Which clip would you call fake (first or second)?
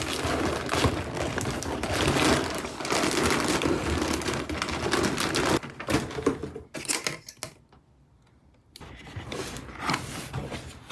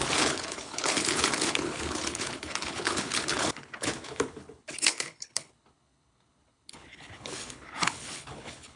second